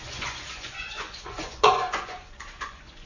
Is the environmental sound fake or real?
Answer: fake